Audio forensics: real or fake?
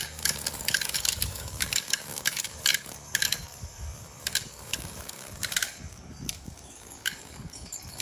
fake